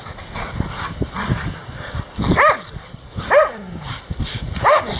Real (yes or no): yes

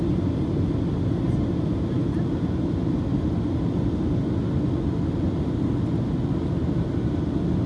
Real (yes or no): yes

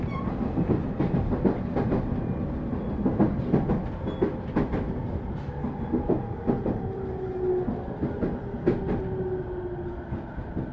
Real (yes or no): yes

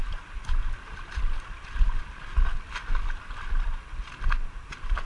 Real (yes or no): yes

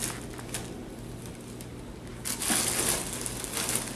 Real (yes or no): yes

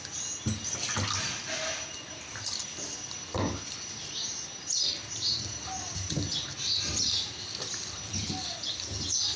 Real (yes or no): yes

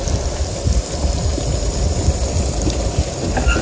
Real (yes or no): yes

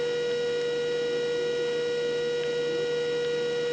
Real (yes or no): yes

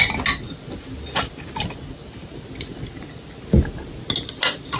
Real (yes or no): yes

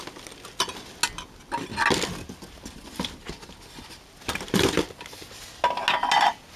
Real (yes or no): yes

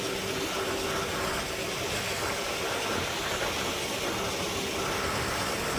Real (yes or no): yes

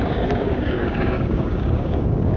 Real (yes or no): no